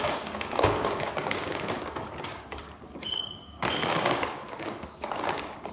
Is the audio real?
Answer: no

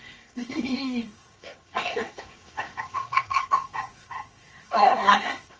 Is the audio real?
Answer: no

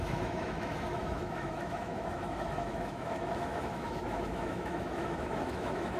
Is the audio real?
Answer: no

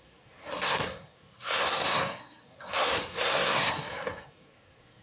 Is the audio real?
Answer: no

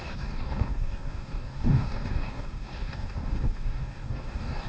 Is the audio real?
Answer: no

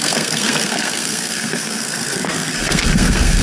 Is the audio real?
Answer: no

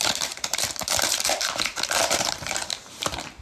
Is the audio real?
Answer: no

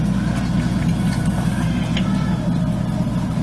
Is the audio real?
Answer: yes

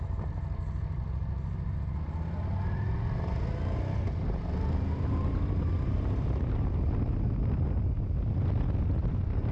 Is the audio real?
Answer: yes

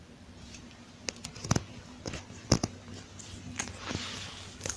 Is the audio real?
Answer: yes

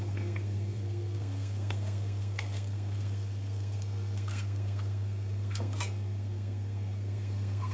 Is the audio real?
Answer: no